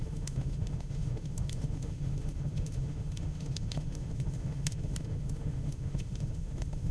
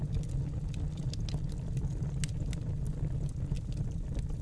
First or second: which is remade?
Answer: first